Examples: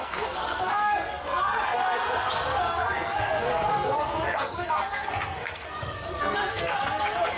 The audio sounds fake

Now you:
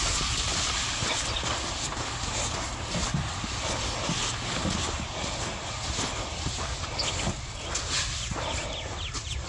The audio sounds real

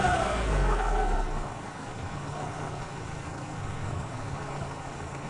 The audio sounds fake